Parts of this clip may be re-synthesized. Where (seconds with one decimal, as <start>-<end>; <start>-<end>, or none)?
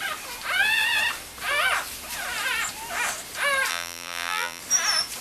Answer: 3.7-4.6